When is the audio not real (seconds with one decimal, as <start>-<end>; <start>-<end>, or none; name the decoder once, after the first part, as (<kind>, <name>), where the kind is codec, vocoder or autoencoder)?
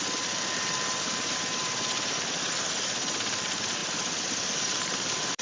none